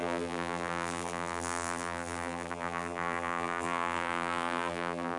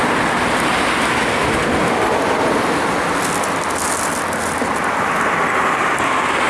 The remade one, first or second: first